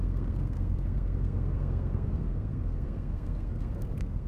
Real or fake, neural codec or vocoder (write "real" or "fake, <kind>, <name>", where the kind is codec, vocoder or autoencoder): fake, codec, SNAC